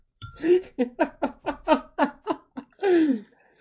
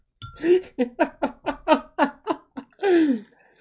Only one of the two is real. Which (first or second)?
second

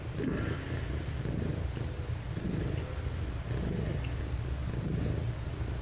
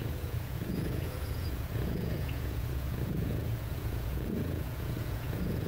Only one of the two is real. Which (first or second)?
first